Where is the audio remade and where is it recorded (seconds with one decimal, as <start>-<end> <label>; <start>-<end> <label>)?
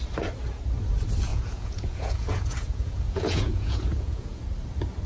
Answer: 0.0-1.3 recorded; 1.3-4.4 remade; 4.4-5.1 recorded